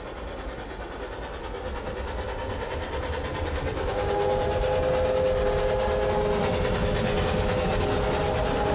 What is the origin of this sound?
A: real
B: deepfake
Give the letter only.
A